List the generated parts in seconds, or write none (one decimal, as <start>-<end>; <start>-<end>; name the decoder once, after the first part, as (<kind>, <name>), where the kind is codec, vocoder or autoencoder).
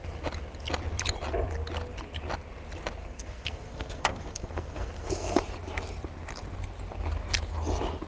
3.0-5.4 (codec, SNAC)